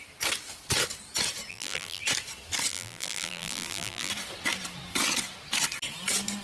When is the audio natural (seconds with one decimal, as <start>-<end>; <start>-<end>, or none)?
0.0-1.5; 2.0-2.7; 4.1-6.4